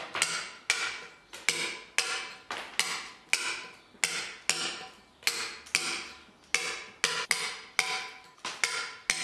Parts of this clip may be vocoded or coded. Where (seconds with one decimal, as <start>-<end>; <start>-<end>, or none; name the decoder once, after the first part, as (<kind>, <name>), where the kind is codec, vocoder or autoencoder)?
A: none